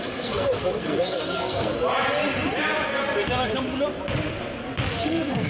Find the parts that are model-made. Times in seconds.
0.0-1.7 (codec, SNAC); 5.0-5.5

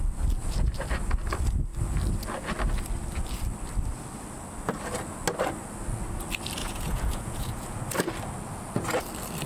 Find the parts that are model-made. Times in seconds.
6.6-7.8 (vocoder, Vocos)

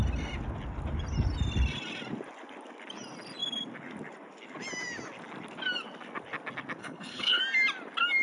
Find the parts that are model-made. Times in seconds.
6.8-7.4 (codec, HILCodec)

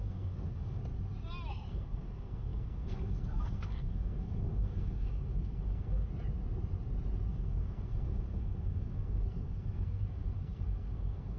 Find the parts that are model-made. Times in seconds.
0.0-0.8 (codec, SNAC); 1.5-6.1; 7.3-11.4

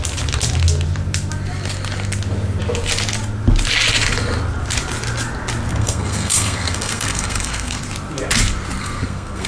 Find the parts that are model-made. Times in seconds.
5.7-7.8 (codec, SNAC); 8.8-9.5